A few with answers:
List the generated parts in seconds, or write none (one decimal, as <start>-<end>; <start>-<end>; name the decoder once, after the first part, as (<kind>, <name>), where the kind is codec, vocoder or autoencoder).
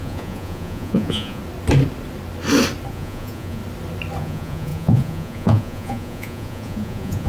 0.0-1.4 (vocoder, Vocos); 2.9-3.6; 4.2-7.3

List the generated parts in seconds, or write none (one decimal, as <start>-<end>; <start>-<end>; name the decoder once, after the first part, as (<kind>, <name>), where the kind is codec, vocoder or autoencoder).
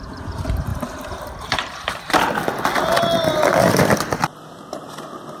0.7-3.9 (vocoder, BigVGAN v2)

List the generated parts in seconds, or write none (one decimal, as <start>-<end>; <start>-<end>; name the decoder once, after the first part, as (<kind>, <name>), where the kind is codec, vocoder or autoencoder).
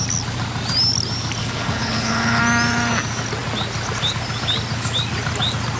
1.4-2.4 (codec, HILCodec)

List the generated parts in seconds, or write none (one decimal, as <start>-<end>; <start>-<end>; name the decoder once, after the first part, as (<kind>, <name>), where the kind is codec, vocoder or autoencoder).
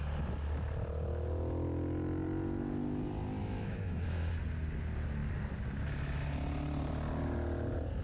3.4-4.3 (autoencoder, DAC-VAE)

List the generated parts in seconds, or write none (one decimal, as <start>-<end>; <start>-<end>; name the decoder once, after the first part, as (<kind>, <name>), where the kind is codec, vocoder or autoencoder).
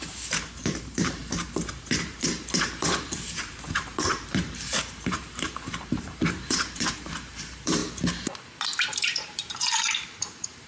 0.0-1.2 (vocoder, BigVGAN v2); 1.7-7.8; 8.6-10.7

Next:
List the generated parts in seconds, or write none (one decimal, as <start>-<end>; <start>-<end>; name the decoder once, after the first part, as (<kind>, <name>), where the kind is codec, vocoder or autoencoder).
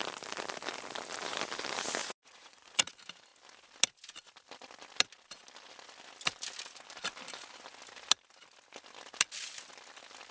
2.0-2.9 (vocoder, Vocos)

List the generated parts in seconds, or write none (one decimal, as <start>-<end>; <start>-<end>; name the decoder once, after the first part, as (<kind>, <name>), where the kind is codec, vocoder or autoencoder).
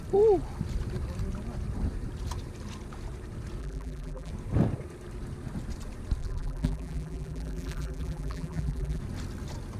3.6-4.3 (vocoder, BigVGAN v2); 6.2-9.0